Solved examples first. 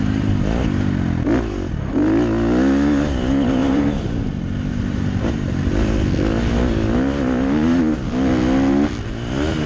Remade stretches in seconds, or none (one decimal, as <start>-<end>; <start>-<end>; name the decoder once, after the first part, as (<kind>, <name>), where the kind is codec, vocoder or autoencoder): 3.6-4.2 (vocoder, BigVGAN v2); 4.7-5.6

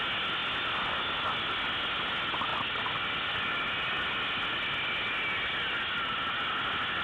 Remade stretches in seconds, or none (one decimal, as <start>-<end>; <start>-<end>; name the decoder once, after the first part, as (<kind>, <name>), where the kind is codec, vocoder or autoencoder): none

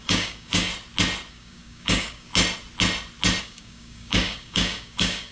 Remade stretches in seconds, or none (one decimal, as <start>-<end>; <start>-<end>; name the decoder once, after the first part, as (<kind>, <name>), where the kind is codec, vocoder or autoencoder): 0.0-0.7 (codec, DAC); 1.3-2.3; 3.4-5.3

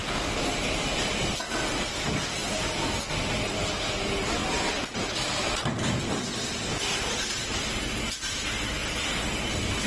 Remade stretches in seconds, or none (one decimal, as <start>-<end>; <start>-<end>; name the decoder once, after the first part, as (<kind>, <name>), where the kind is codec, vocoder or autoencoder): 2.4-3.1 (vocoder, BigVGAN v2); 4.4-6.2; 8.8-9.9

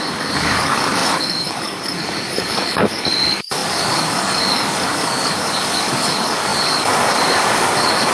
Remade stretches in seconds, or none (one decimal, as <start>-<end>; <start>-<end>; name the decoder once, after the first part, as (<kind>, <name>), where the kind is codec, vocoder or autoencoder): 0.0-8.1 (codec, DAC)

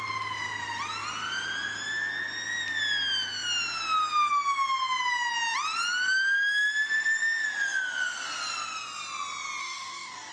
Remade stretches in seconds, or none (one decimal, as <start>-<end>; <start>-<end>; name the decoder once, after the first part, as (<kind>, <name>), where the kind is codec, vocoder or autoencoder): 9.6-10.3 (codec, DAC)

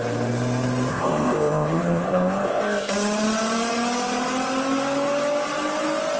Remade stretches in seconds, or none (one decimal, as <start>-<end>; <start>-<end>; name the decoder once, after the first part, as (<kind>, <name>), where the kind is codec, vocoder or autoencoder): 0.9-2.9 (codec, ZipCodec)